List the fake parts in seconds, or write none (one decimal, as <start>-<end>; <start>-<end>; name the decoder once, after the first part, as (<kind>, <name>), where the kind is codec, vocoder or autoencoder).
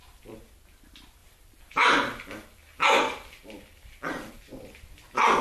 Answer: 1.2-4.4 (vocoder, BigVGAN v2)